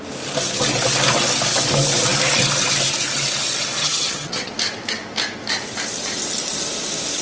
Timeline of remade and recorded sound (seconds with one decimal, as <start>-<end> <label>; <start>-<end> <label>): 0.0-3.8 recorded; 3.8-4.5 remade; 4.5-7.2 recorded